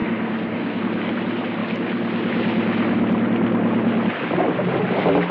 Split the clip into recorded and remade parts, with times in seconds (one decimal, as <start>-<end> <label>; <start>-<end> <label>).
0.0-0.8 remade; 0.8-5.3 recorded